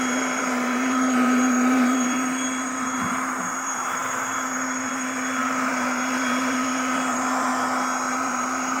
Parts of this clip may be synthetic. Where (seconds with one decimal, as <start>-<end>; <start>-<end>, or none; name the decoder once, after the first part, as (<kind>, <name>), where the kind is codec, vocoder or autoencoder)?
0.0-7.5 (vocoder, BigVGAN v2); 8.1-8.8